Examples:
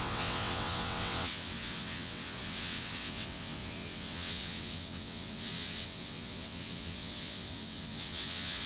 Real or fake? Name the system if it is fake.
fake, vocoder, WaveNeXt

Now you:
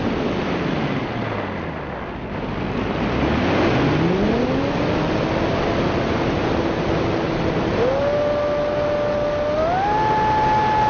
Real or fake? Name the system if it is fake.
real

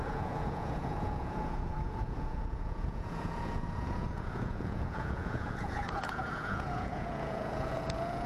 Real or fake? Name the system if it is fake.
fake, vocoder, Vocos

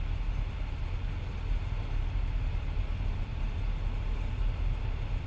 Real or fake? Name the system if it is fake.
real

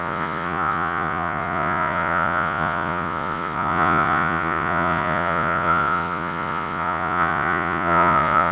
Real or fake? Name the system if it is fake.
fake, vocoder, Vocos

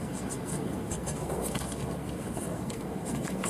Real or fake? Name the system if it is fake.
fake, codec, SNAC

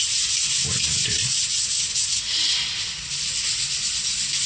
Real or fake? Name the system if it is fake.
real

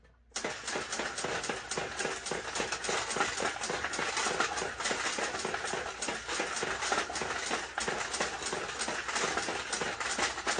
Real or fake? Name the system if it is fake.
real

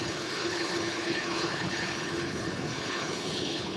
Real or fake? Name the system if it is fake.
fake, codec, HILCodec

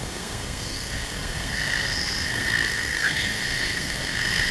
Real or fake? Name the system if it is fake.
fake, codec, SNAC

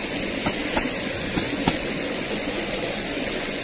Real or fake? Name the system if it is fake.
fake, vocoder, Vocos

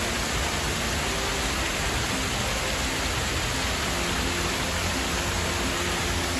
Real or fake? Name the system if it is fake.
real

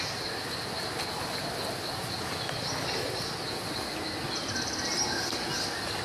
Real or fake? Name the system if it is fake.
real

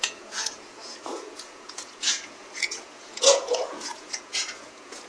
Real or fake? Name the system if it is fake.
fake, vocoder, Vocos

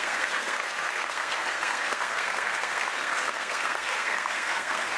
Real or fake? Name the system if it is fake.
fake, codec, SNAC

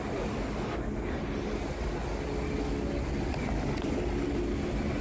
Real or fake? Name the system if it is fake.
real